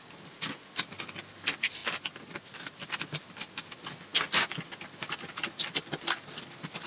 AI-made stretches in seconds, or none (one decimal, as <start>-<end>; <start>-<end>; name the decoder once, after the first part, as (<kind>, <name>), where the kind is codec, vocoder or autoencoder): none